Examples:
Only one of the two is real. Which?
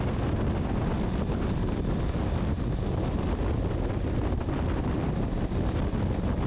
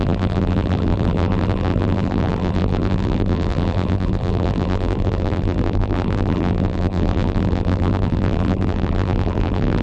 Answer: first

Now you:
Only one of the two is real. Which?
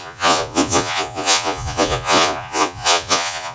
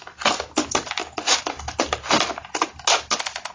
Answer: second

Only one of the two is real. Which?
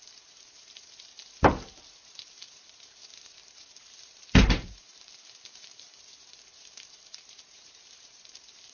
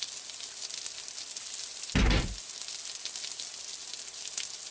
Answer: second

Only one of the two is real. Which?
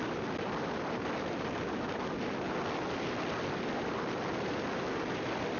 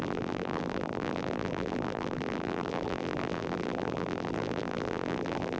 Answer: first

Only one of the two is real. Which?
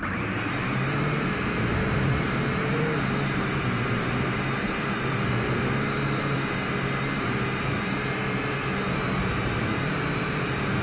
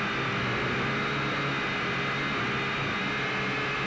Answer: second